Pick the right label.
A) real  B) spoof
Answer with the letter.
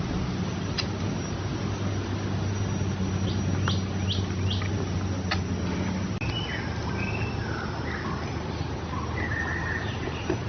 A